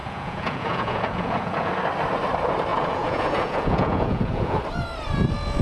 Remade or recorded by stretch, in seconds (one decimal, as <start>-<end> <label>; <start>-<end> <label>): 0.0-1.7 remade; 1.7-2.7 recorded; 2.7-4.6 remade; 4.6-5.6 recorded